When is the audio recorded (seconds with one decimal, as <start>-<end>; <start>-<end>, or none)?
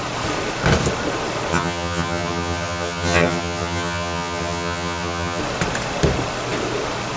0.0-1.5; 5.4-7.2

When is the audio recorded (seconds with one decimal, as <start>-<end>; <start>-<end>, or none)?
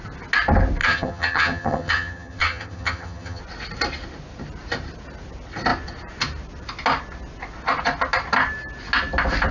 0.0-0.8; 3.4-9.5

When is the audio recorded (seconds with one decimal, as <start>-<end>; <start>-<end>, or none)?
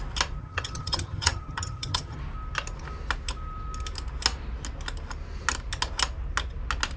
0.0-0.4; 2.2-7.0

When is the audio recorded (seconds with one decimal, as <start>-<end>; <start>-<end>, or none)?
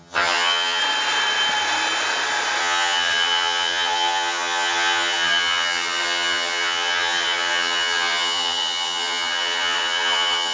0.8-2.6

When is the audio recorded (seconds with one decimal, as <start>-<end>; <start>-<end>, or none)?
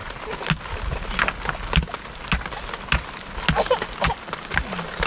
0.0-5.1